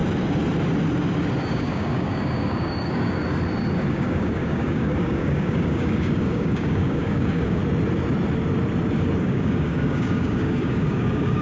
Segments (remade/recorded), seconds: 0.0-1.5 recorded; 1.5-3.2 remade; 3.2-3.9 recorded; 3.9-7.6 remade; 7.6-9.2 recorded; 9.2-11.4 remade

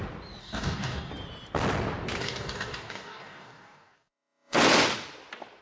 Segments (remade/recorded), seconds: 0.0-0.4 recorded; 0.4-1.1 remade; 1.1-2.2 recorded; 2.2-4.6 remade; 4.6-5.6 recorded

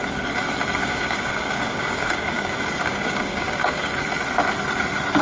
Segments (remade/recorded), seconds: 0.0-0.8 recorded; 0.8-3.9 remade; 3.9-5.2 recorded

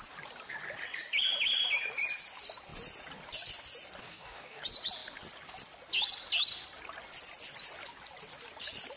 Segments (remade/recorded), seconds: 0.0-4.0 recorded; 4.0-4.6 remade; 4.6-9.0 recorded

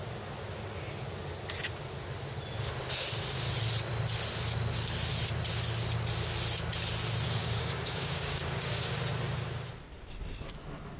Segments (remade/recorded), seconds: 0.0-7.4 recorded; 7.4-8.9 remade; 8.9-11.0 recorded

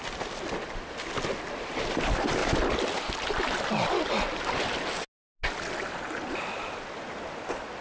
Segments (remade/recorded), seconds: 0.0-7.8 recorded

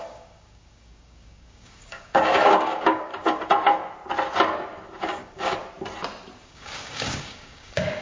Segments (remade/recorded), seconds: 0.0-3.1 remade; 3.1-5.0 recorded; 5.0-5.6 remade; 5.6-6.4 recorded; 6.4-8.0 remade